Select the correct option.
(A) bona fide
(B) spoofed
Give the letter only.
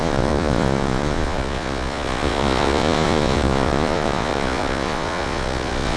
B